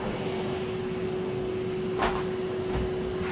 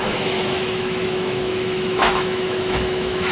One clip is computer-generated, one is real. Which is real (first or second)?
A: first